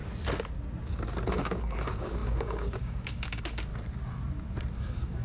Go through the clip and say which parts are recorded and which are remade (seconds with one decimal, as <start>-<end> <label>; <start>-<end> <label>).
0.0-1.3 recorded; 1.3-3.7 remade; 3.7-4.8 recorded; 4.8-5.2 remade